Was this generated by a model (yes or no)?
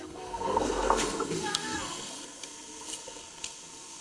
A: yes